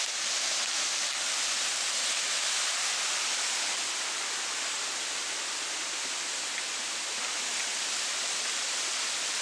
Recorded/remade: recorded